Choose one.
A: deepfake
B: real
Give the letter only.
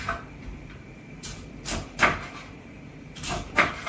A